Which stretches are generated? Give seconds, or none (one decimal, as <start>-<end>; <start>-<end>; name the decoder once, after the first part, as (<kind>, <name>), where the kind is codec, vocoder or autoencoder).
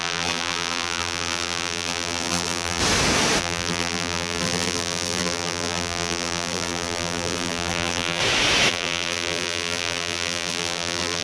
0.0-2.8 (vocoder, BigVGAN v2); 3.4-8.2; 8.7-11.2